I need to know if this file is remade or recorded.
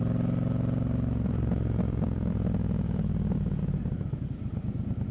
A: remade